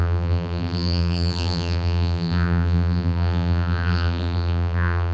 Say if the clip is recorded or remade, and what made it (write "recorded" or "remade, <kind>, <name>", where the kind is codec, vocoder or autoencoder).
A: remade, vocoder, BigVGAN v2